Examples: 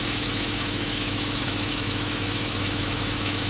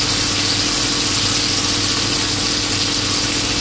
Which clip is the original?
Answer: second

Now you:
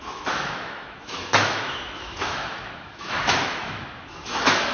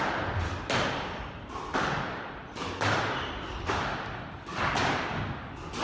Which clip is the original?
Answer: second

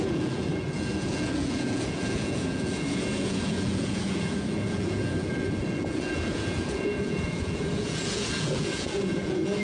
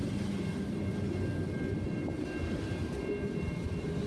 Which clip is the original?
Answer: second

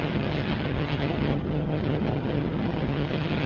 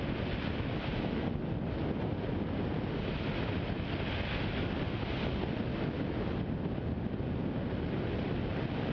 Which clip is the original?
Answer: second